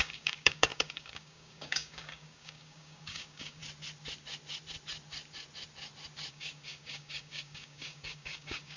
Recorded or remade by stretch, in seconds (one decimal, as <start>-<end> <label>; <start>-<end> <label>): 0.0-3.6 remade; 3.6-6.3 recorded; 6.3-8.8 remade